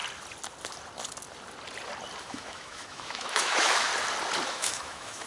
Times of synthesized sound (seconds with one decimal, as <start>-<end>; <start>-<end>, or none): 2.2-3.9; 4.5-5.3